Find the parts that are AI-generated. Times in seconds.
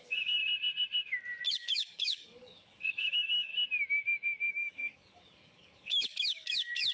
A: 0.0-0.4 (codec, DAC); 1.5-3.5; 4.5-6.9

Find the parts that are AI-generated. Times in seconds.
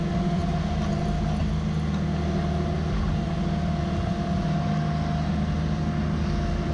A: none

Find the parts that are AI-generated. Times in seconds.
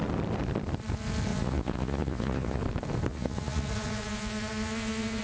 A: 1.3-2.6 (vocoder, Vocos); 3.1-5.2